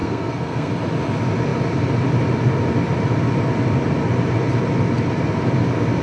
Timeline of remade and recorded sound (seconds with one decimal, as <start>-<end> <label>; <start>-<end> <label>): 0.0-0.7 remade; 0.7-6.0 recorded